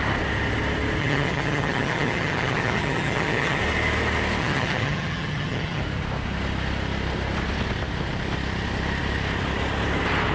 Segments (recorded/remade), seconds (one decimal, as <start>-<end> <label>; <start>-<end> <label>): 0.0-1.0 recorded; 1.0-3.6 remade; 3.6-4.4 recorded; 4.4-5.8 remade; 5.8-10.3 recorded